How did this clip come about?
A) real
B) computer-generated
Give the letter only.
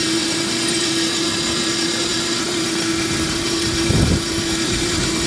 B